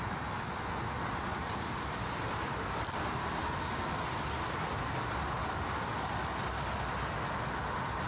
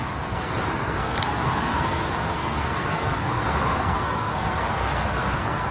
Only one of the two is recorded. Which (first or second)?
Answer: first